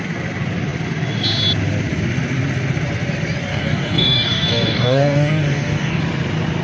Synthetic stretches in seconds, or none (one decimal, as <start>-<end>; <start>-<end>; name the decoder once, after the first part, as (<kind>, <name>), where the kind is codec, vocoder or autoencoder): 3.5-6.0 (codec, DAC)